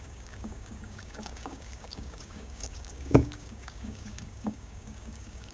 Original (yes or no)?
no